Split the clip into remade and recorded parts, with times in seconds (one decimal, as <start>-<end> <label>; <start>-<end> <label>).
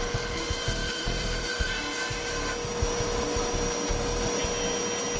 0.0-0.8 recorded; 0.8-1.8 remade; 1.8-5.2 recorded